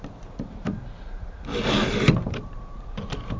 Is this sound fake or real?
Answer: real